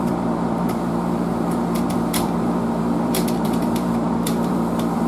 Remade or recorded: remade